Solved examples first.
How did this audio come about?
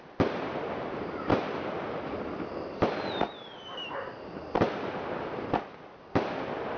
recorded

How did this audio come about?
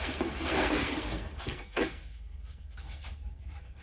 remade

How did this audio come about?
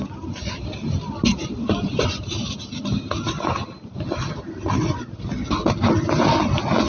recorded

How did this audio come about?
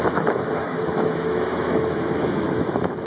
remade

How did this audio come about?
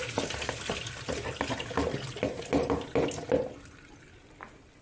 recorded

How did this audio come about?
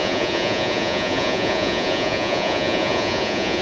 remade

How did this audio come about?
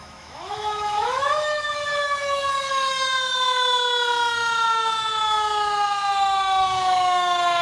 remade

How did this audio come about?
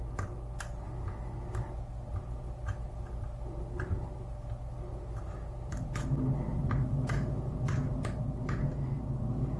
recorded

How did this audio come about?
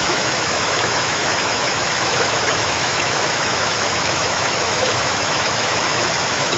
remade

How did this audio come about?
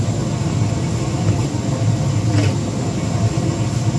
recorded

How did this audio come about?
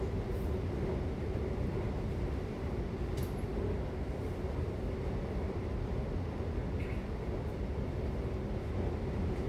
recorded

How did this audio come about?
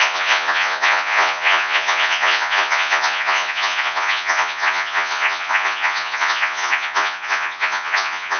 remade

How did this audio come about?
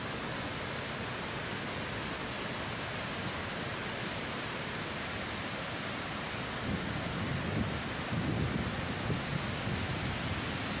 recorded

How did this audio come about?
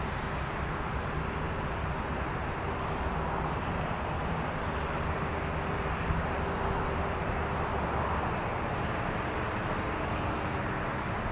recorded